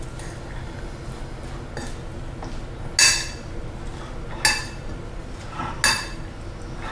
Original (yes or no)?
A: yes